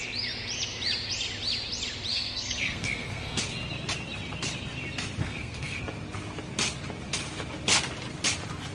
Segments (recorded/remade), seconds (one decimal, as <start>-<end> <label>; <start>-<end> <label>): 0.0-2.1 recorded; 2.1-3.4 remade; 3.4-5.2 recorded; 5.2-5.8 remade; 5.8-8.7 recorded